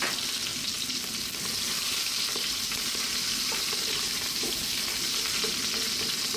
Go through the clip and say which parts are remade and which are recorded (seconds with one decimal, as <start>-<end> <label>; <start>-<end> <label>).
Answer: 0.0-0.5 recorded; 0.5-1.1 remade; 1.1-1.8 recorded; 1.8-5.6 remade; 5.6-6.4 recorded